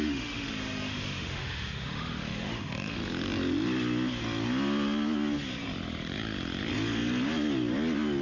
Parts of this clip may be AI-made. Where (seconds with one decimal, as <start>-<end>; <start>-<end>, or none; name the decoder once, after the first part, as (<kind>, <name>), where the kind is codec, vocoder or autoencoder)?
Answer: 0.0-3.0 (autoencoder, DAC-VAE)

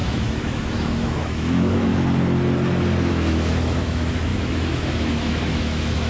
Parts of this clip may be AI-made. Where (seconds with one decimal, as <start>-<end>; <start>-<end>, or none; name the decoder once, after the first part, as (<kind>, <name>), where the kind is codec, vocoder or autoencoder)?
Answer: 0.0-1.9 (autoencoder, DAC-VAE); 3.1-6.1

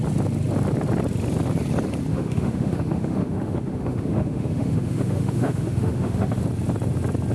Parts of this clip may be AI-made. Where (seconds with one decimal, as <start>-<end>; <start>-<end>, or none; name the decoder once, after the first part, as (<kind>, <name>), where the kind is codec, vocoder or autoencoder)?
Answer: 2.1-6.4 (autoencoder, DAC-VAE)

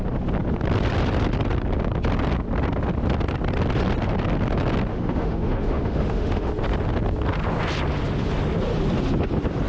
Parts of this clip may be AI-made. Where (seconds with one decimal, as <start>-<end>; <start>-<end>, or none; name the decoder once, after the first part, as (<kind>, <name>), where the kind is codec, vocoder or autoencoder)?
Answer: 4.9-6.5 (autoencoder, DAC-VAE)

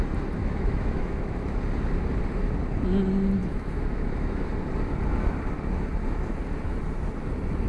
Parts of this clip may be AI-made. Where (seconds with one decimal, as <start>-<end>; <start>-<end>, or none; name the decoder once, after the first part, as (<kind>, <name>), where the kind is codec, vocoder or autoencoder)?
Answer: 0.4-1.6 (autoencoder, DAC-VAE); 3.4-4.5